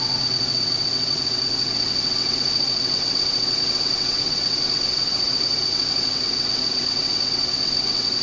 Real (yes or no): no